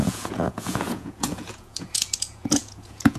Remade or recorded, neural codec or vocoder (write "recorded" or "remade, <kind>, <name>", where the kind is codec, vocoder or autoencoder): remade, vocoder, Vocos